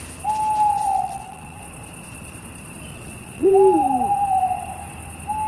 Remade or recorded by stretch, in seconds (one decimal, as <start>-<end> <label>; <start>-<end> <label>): 0.0-0.8 recorded; 0.8-1.6 remade; 1.6-2.9 recorded; 2.9-3.5 remade; 3.5-5.5 recorded

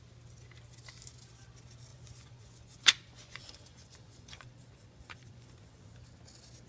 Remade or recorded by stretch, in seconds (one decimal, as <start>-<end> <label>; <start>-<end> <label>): 0.0-1.9 recorded; 1.9-5.9 remade; 5.9-6.7 recorded

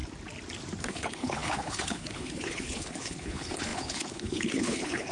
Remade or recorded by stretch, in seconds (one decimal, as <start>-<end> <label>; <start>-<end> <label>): 0.0-0.8 recorded; 0.8-5.1 remade